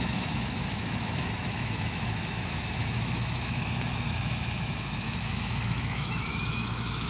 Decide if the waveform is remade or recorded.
remade